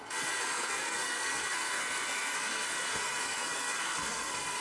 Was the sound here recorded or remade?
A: remade